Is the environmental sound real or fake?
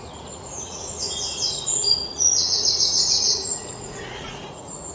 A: fake